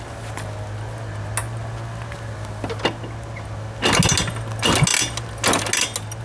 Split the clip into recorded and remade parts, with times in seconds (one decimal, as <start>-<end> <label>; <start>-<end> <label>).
0.0-6.2 recorded